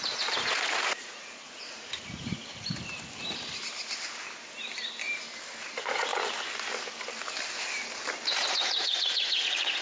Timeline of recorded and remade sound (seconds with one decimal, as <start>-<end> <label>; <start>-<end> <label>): 0.0-2.5 remade; 2.5-5.6 recorded; 5.6-6.1 remade; 6.1-8.5 recorded; 8.5-9.8 remade